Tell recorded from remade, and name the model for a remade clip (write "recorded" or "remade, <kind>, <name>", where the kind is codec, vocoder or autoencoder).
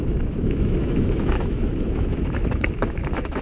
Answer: remade, autoencoder, DAC-VAE